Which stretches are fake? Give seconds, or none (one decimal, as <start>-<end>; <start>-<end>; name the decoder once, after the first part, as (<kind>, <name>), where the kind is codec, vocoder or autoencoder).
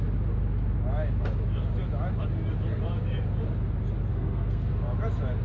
4.1-4.7 (codec, SNAC)